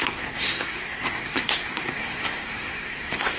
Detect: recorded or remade remade